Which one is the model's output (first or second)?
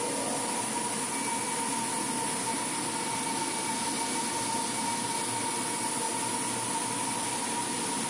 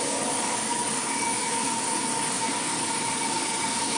second